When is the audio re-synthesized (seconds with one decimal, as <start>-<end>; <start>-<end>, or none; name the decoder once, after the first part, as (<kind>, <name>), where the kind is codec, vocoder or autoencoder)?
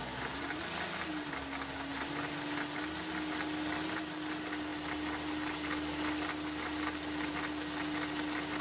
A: none